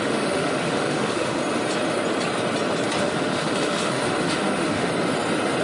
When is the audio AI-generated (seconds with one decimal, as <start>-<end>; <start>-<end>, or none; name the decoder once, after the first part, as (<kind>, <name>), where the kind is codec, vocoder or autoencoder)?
0.0-1.4 (autoencoder, DAC-VAE); 3.0-4.9